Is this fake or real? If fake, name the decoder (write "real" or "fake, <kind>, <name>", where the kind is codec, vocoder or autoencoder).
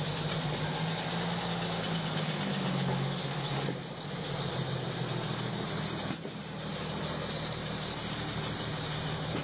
real